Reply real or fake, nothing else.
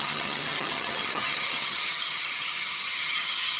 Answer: fake